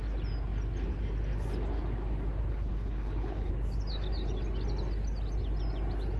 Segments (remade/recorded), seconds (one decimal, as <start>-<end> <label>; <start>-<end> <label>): 0.0-2.5 recorded; 2.5-3.5 remade; 3.5-6.2 recorded